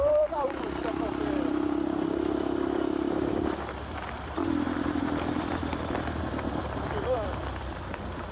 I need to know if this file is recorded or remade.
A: remade